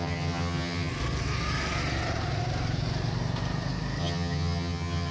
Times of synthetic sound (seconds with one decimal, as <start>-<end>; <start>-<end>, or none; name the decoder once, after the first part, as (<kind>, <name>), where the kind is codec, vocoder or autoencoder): 0.0-0.9 (vocoder, HiFi-GAN); 4.0-5.1